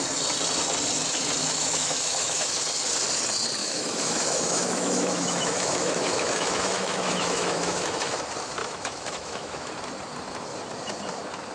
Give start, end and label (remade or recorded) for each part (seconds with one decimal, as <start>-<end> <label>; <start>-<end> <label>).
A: 0.0-1.4 recorded; 1.4-2.6 remade; 2.6-3.6 recorded; 3.6-8.2 remade; 8.2-8.6 recorded; 8.6-9.7 remade; 9.7-11.5 recorded